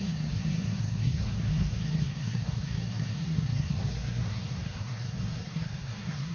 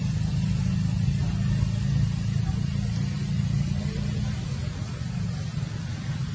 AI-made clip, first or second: first